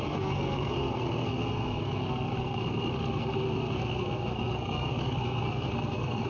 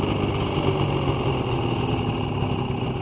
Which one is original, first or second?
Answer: second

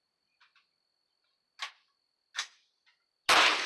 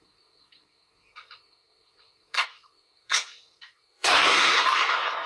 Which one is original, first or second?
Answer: first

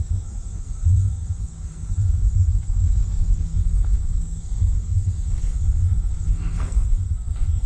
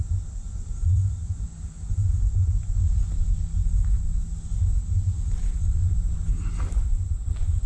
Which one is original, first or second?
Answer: second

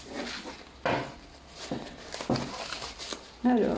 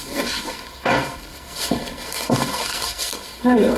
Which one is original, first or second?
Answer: first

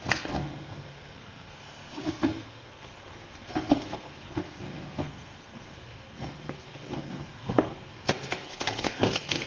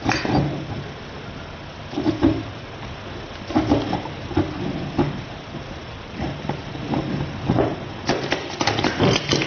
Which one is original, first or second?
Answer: second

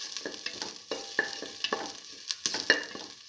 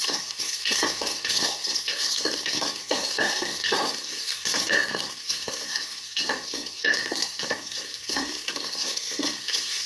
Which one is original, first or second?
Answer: first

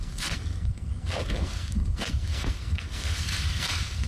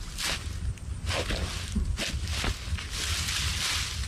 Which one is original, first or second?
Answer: second